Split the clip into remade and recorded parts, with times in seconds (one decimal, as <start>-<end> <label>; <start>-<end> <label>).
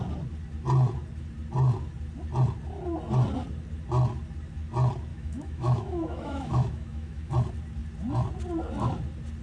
0.0-5.1 recorded; 5.1-7.3 remade; 7.3-9.4 recorded